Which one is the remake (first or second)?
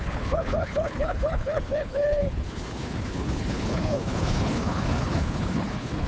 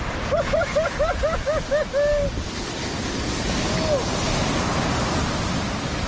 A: first